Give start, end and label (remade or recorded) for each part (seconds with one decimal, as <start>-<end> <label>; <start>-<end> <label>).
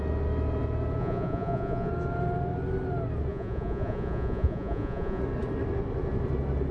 0.0-1.0 recorded; 1.0-1.9 remade; 1.9-3.3 recorded; 3.3-5.2 remade; 5.2-6.7 recorded